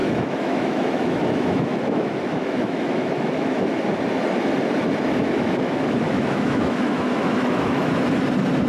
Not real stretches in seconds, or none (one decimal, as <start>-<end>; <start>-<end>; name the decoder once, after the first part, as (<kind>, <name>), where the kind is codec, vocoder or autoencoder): 0.0-3.7 (autoencoder, DAC-VAE); 5.2-7.9